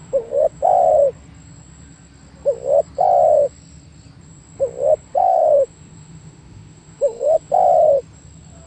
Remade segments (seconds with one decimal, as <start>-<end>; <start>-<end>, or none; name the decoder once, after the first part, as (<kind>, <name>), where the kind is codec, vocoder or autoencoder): 0.0-0.6 (autoencoder, DAC-VAE); 5.1-7.5